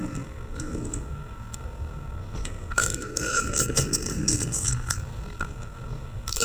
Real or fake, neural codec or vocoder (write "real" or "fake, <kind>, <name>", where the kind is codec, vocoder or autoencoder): fake, codec, SNAC